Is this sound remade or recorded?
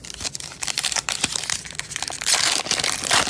recorded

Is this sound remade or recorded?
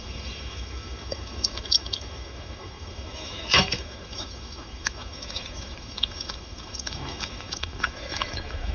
remade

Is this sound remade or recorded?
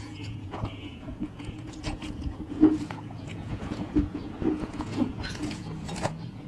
remade